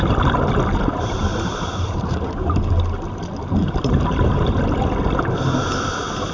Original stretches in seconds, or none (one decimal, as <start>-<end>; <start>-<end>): 0.0-1.3; 2.7-3.6; 4.6-6.3